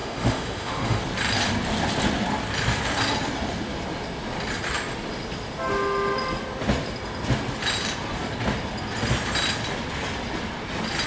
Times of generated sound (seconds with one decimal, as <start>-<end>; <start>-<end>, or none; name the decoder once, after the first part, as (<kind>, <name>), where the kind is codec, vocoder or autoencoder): 0.0-1.0 (autoencoder, DAC-VAE)